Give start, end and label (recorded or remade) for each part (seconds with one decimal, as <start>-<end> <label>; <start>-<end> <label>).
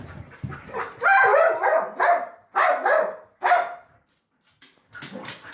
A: 0.0-5.5 recorded